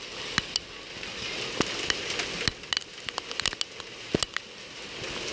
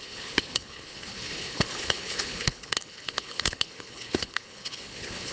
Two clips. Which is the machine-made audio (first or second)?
second